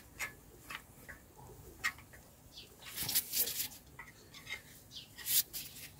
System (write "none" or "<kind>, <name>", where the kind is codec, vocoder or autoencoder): none